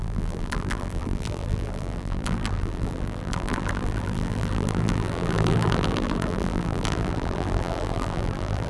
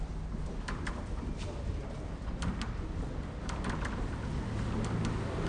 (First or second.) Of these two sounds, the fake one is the first